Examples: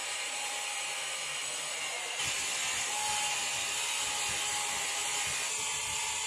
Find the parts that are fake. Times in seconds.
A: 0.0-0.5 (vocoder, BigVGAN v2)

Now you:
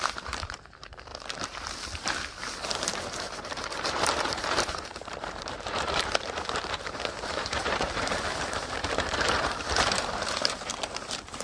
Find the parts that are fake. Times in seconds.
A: 0.0-1.1 (vocoder, BigVGAN v2); 3.2-11.4

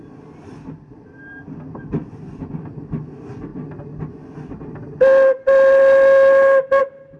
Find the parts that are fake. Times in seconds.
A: 0.0-3.5 (vocoder, BigVGAN v2); 6.8-7.2

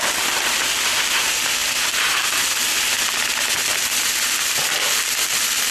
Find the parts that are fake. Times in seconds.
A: none

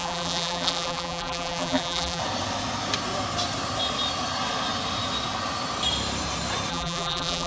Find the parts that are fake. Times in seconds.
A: 0.0-2.2 (vocoder, BigVGAN v2); 6.7-7.5

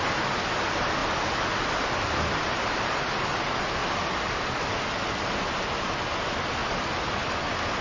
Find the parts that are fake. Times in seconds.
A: 1.0-1.6 (vocoder, BigVGAN v2); 3.8-4.3; 6.6-7.2

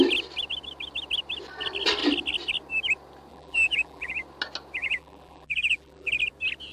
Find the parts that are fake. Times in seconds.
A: 3.3-4.1 (vocoder, BigVGAN v2); 4.8-6.1

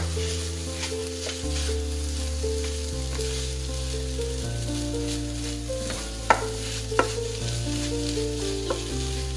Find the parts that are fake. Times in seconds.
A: none